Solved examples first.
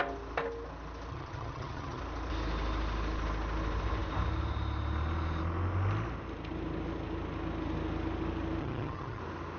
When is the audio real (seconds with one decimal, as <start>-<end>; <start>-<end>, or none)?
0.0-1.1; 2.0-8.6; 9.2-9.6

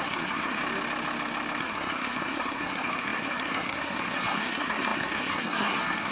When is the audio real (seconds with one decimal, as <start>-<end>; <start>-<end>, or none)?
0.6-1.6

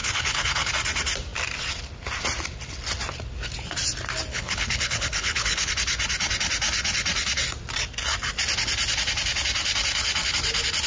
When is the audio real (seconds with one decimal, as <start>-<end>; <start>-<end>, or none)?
0.7-4.3; 5.7-10.9

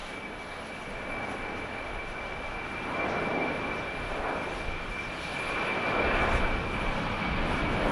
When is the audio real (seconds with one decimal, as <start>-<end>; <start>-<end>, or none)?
0.0-7.9

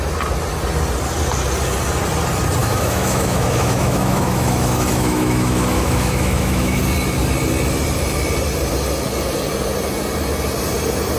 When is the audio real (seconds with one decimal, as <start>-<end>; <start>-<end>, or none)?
0.0-2.6; 6.8-11.2

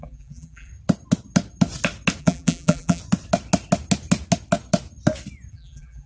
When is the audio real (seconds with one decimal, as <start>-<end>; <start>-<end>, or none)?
0.7-2.2; 3.0-5.5

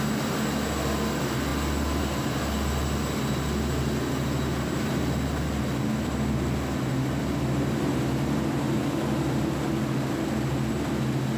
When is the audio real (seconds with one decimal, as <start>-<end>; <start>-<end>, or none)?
0.0-11.4